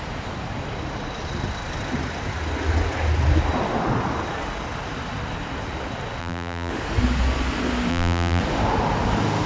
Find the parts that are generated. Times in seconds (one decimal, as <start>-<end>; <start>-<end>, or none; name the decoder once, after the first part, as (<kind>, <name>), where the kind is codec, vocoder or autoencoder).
6.2-6.7 (vocoder, BigVGAN v2); 7.9-8.4

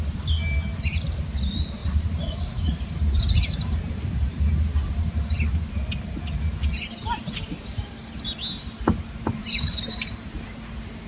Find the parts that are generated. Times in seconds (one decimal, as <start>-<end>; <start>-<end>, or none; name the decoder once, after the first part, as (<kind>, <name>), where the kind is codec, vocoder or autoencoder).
1.8-5.2 (vocoder, BigVGAN v2); 9.4-10.5

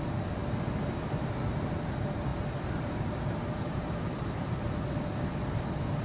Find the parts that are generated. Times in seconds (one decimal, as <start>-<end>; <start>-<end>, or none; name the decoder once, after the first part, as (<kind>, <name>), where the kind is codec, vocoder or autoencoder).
2.3-4.7 (vocoder, BigVGAN v2)

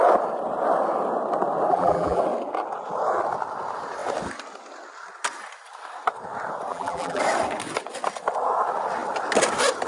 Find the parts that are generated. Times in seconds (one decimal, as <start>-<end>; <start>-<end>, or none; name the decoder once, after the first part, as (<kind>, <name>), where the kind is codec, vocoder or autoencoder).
1.7-2.2 (vocoder, BigVGAN v2); 6.7-7.2

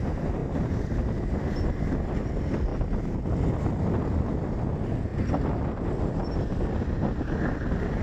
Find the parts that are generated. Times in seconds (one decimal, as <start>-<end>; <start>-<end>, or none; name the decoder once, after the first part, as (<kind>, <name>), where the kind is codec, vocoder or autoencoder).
0.4-1.4 (vocoder, BigVGAN v2)

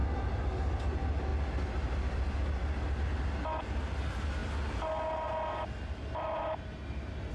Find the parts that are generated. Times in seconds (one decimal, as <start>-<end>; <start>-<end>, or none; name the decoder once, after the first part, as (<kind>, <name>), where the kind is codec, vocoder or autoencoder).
none